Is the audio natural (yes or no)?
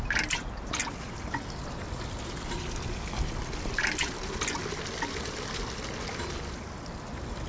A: yes